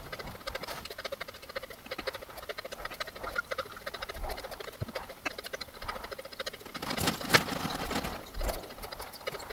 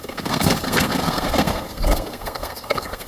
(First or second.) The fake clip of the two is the second